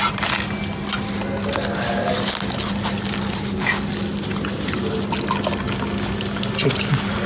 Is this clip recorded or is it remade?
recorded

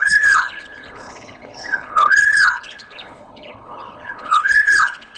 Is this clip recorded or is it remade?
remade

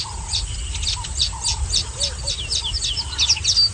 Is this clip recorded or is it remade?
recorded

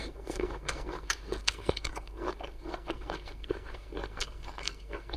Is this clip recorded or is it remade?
remade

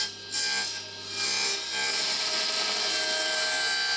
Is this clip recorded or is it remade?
recorded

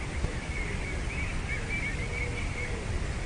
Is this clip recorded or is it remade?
recorded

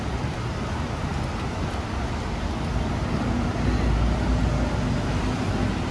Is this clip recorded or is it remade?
recorded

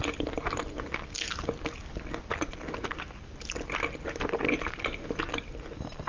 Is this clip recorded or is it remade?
recorded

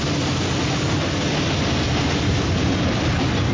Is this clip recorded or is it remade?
recorded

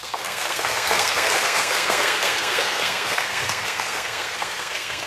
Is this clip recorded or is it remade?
remade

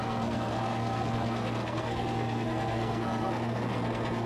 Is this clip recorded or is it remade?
remade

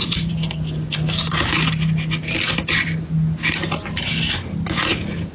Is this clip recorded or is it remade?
recorded